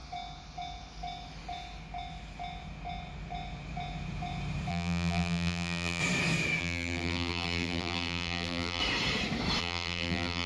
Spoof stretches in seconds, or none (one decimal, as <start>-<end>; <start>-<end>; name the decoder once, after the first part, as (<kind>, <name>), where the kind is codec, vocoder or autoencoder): 4.7-6.0 (vocoder, BigVGAN v2); 6.6-8.8; 9.6-10.5